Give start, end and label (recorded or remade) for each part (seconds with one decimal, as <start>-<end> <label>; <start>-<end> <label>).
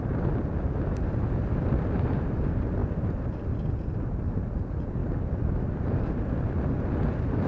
0.0-5.0 recorded; 5.0-5.8 remade; 5.8-7.5 recorded